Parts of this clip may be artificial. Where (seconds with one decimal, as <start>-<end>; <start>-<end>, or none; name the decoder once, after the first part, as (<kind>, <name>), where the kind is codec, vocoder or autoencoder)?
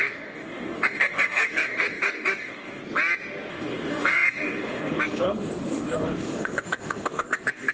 0.0-2.8 (codec, DAC); 3.5-7.7